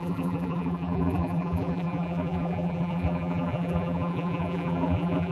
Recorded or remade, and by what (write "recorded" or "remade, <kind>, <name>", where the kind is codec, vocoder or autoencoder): remade, vocoder, BigVGAN v2